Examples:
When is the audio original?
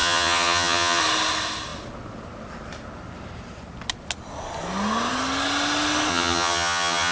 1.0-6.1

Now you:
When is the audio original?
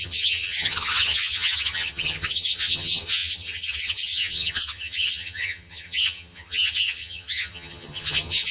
none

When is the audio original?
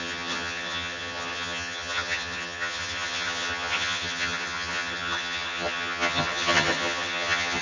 none